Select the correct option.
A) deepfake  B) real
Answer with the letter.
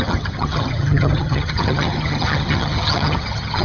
A